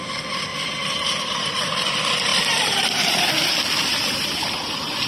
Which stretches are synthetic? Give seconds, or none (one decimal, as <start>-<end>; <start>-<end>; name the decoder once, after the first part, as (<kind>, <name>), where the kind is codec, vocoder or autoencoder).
0.5-1.6 (vocoder, BigVGAN v2); 2.3-3.3; 3.9-5.1